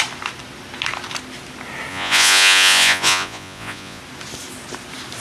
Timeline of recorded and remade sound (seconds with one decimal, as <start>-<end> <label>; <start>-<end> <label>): 0.0-1.9 recorded; 1.9-4.0 remade; 4.0-5.2 recorded